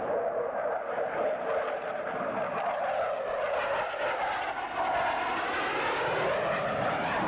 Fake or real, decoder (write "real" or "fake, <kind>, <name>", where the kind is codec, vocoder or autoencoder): real